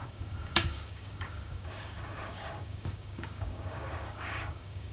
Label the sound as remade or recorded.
remade